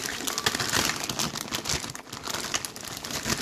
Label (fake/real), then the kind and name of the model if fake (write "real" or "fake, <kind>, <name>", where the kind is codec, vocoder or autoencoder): real